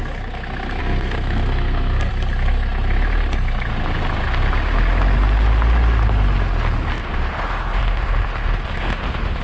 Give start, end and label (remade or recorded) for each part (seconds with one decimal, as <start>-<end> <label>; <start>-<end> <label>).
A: 0.0-0.8 recorded; 0.8-2.1 remade; 2.1-9.4 recorded